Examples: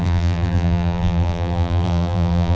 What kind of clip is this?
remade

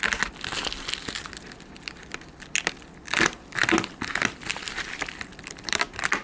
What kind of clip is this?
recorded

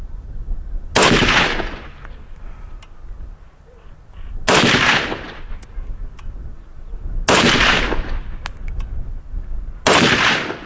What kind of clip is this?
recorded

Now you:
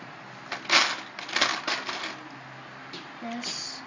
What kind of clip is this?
recorded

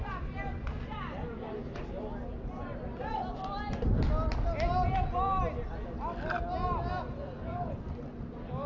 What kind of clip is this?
recorded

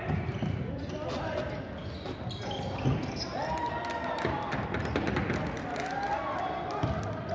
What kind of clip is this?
recorded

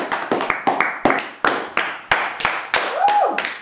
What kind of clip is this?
recorded